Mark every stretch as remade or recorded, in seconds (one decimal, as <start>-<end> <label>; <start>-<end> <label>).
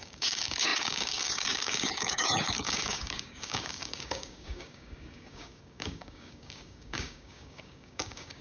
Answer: 0.0-8.4 remade